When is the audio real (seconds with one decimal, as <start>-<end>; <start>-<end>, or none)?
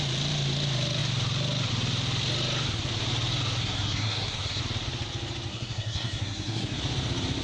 0.0-3.6; 4.6-5.5; 6.8-7.4